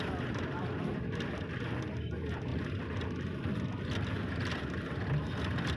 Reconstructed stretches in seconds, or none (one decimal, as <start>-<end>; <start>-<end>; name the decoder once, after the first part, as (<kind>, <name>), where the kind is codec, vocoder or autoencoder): none